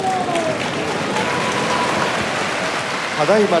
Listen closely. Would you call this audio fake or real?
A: real